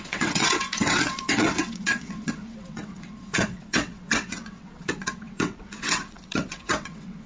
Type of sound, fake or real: fake